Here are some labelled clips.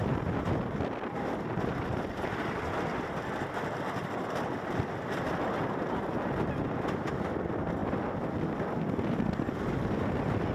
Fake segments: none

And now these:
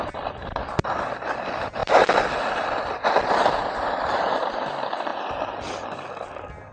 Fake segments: 0.0-1.8 (vocoder, BigVGAN v2); 3.3-5.1; 6.3-6.7

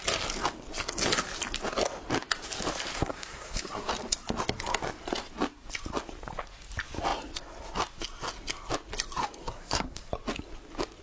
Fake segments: 2.9-3.9 (codec, SNAC); 9.4-10.1

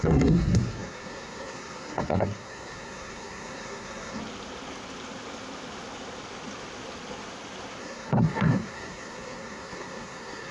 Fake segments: 0.0-4.2 (codec, SNAC); 7.8-10.5

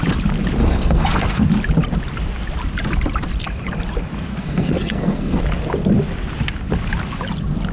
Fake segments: 0.6-1.4 (codec, SNAC); 4.3-5.4

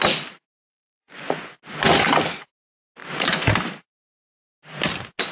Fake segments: 0.7-1.6 (vocoder, Vocos); 3.0-3.5